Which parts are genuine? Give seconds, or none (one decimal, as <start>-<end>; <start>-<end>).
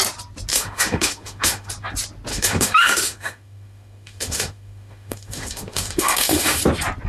0.0-0.5; 1.7-2.3; 6.6-7.1